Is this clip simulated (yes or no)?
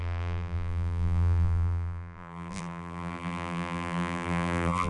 yes